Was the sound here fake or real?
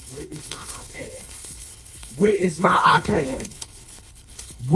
fake